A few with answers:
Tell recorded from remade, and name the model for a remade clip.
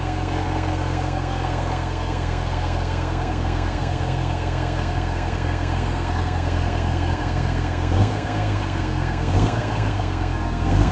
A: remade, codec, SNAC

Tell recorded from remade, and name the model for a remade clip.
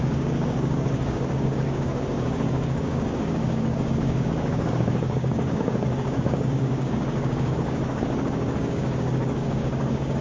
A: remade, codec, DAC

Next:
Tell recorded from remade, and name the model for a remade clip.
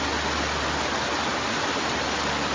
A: recorded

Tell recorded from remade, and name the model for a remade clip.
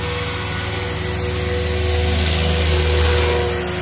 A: recorded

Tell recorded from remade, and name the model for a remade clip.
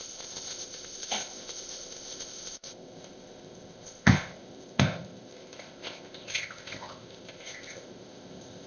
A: remade, codec, ZipCodec